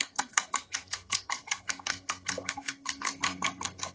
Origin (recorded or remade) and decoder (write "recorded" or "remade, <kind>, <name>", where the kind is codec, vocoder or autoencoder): remade, codec, SNAC